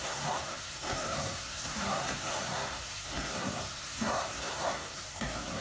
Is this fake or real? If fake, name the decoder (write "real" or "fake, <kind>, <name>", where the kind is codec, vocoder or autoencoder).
fake, codec, SNAC